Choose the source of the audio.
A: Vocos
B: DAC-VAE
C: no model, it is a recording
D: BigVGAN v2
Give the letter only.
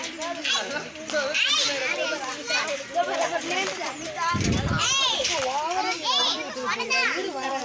C